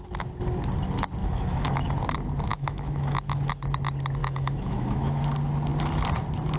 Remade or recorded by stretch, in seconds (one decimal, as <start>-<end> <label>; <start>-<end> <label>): 0.0-1.2 recorded; 1.2-1.9 remade; 1.9-2.5 recorded; 2.5-3.4 remade; 3.4-4.2 recorded; 4.2-5.2 remade; 5.2-6.6 recorded